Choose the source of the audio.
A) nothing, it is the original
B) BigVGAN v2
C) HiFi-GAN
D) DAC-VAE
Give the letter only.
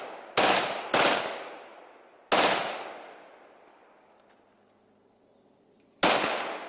A